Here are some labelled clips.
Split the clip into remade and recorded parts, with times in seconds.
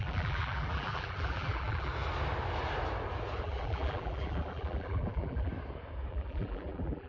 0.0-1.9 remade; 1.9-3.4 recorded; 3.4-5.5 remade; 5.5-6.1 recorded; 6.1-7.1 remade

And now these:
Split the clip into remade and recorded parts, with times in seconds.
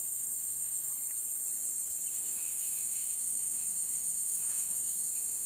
0.0-0.9 remade; 0.9-2.1 recorded; 2.1-5.5 remade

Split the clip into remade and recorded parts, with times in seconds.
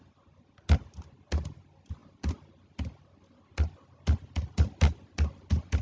0.0-5.8 recorded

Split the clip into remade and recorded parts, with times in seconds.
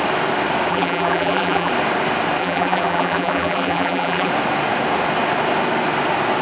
0.0-0.7 recorded; 0.7-1.7 remade; 1.7-2.4 recorded; 2.4-4.3 remade; 4.3-6.4 recorded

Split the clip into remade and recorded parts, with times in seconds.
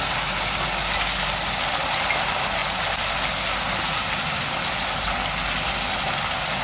0.0-6.6 recorded